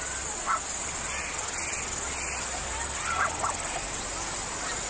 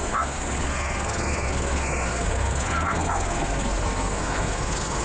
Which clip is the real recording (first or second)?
first